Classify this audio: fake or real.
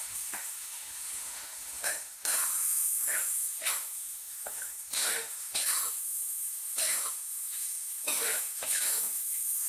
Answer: fake